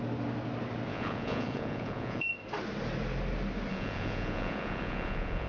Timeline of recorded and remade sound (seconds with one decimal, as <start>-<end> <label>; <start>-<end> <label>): 0.0-0.9 recorded; 0.9-2.3 remade; 2.3-3.7 recorded; 3.7-5.5 remade

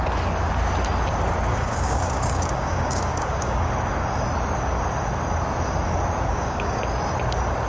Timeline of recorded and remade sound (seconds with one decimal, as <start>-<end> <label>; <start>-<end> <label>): 0.0-1.5 recorded; 1.5-3.7 remade; 3.7-6.3 recorded; 6.3-6.8 remade; 6.8-7.7 recorded